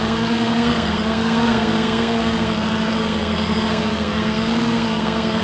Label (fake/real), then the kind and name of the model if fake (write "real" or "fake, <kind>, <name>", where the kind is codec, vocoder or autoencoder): fake, codec, SNAC